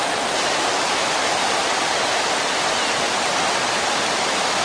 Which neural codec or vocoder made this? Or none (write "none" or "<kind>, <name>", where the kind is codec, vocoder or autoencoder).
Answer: vocoder, BigVGAN v2